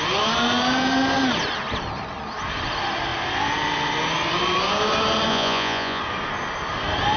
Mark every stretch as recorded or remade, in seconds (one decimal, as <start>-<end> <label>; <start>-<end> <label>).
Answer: 0.0-5.3 recorded; 5.3-6.0 remade; 6.0-7.2 recorded